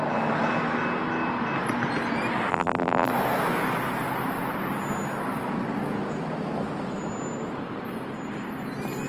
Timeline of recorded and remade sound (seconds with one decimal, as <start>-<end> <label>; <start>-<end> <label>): 0.0-2.5 recorded; 2.5-3.1 remade; 3.1-9.1 recorded